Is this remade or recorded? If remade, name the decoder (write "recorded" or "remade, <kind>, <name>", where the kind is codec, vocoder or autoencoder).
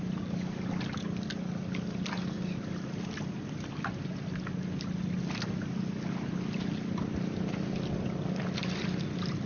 recorded